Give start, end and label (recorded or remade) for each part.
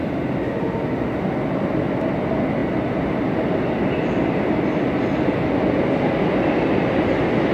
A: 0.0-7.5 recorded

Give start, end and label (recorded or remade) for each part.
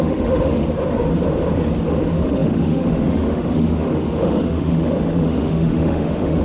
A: 0.0-0.6 remade; 0.6-2.0 recorded; 2.0-6.4 remade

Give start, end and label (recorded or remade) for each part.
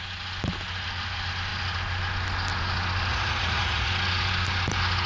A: 0.0-3.1 recorded; 3.1-3.9 remade; 3.9-5.1 recorded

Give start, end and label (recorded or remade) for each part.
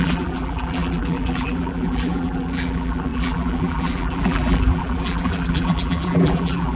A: 0.0-6.8 remade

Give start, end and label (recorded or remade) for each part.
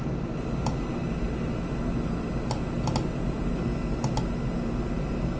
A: 0.0-5.4 recorded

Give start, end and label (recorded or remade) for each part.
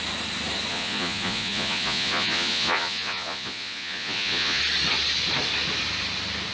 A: 0.0-0.7 recorded; 0.7-4.6 remade; 4.6-6.5 recorded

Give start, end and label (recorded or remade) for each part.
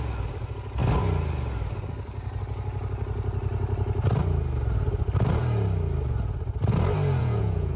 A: 0.0-7.2 recorded; 7.2-7.8 remade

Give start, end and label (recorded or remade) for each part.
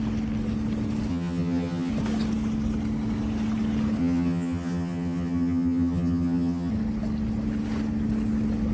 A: 0.0-1.1 recorded; 1.1-1.9 remade; 1.9-4.0 recorded; 4.0-6.7 remade; 6.7-8.7 recorded